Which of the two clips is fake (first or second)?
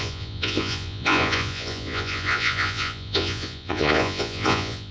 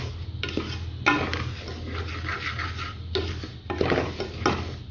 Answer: first